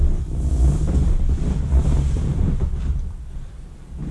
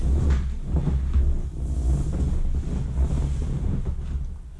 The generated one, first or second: first